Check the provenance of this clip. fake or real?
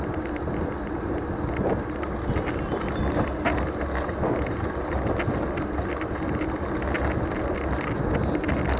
real